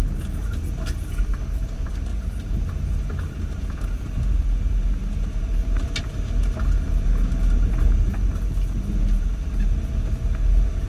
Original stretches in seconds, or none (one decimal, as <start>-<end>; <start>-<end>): 0.0-2.1; 2.8-10.9